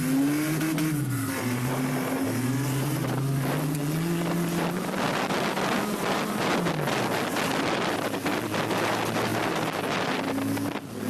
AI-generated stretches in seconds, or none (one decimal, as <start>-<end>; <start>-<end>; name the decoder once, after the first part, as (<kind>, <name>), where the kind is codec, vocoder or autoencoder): none